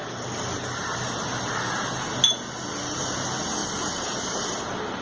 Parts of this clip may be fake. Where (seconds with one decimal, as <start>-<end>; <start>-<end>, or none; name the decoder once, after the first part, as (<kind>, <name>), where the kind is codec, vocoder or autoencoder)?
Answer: none